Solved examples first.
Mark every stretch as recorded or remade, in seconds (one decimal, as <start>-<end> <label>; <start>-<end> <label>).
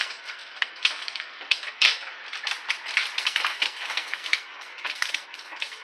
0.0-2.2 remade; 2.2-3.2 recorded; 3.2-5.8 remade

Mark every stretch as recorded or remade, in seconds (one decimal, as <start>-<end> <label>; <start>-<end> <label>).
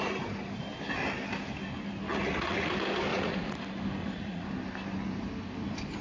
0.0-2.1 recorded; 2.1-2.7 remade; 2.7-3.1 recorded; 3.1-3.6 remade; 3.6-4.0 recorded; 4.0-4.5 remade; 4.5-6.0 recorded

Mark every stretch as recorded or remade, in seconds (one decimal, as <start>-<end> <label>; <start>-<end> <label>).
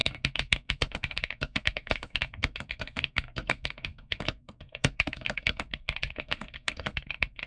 0.0-7.5 remade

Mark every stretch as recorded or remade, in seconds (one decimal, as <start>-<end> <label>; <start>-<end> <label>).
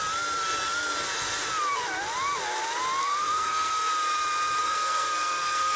0.0-3.0 recorded; 3.0-3.9 remade; 3.9-4.6 recorded; 4.6-5.8 remade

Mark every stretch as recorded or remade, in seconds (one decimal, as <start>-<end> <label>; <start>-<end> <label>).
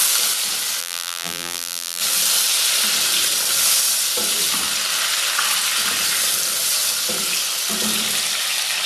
0.0-0.8 recorded; 0.8-2.0 remade; 2.0-8.9 recorded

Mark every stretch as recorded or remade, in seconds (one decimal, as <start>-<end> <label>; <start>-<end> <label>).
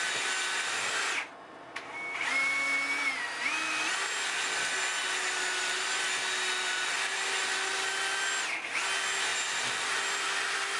0.0-10.8 recorded